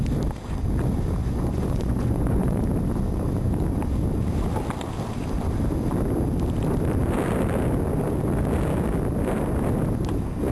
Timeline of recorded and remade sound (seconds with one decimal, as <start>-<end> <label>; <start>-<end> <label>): 0.0-1.2 recorded; 1.2-2.6 remade; 2.6-10.5 recorded